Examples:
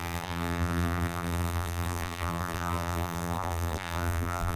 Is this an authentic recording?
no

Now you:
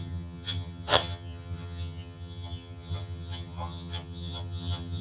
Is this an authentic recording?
no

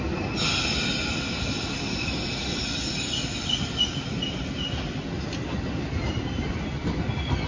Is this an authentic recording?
yes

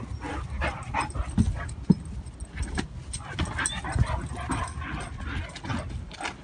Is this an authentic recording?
yes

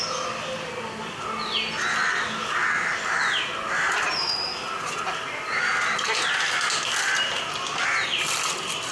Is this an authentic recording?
yes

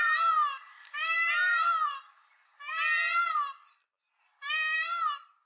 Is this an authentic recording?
no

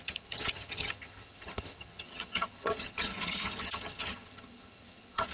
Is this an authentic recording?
no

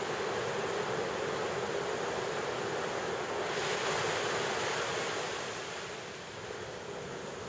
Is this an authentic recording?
yes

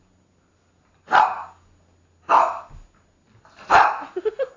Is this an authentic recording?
yes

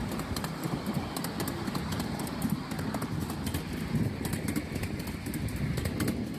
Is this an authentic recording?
yes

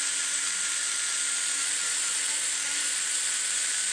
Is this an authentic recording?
yes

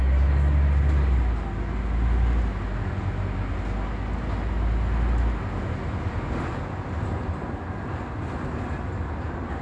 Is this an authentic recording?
yes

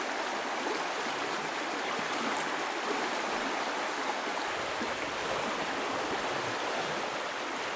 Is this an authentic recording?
yes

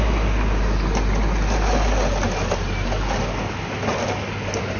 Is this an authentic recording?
yes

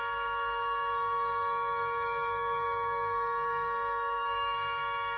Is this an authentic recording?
no